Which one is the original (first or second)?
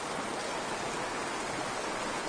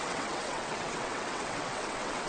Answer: first